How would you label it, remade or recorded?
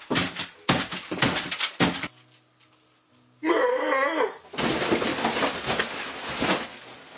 recorded